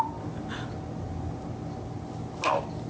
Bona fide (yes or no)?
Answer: yes